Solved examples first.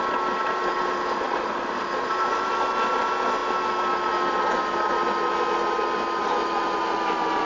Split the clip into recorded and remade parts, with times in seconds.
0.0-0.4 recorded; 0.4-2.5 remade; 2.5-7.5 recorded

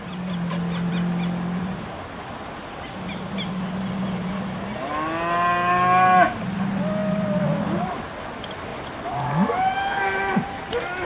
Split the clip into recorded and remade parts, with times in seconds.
0.0-11.0 recorded

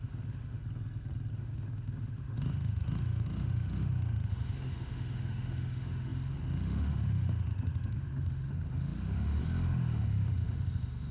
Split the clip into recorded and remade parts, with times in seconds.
0.0-0.6 remade; 0.6-1.3 recorded; 1.3-11.1 remade